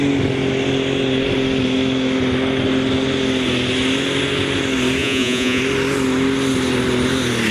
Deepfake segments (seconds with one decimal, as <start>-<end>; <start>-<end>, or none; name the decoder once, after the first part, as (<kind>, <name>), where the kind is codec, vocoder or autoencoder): 5.0-5.6 (vocoder, Vocos)

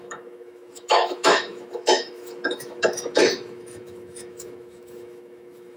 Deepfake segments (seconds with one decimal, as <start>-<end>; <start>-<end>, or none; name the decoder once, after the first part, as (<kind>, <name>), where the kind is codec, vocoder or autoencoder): 0.0-5.8 (autoencoder, DAC-VAE)

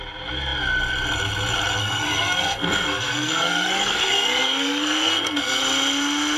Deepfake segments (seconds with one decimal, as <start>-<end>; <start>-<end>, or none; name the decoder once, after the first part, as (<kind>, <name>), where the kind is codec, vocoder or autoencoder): 1.8-5.6 (codec, SNAC)

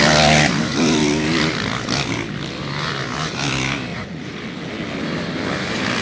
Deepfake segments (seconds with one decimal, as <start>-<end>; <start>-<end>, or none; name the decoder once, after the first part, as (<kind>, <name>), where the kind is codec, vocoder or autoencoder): 3.9-4.4 (vocoder, Vocos)

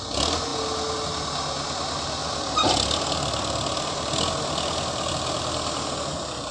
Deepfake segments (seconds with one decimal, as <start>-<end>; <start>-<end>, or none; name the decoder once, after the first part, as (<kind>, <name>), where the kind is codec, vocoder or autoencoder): none

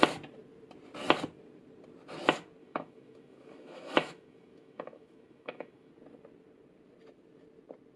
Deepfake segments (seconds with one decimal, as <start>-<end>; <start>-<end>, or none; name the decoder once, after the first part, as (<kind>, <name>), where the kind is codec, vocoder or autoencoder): 2.6-5.9 (autoencoder, DAC-VAE)

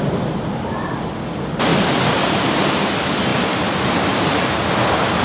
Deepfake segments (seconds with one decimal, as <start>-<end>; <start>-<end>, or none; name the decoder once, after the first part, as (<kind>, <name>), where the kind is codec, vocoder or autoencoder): 1.7-2.7 (vocoder, BigVGAN v2); 3.3-5.2

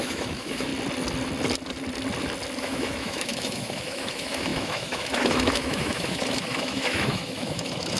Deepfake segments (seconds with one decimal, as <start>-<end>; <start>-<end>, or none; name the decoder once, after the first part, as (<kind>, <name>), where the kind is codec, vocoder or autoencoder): 0.0-0.7 (autoencoder, DAC-VAE); 2.6-8.0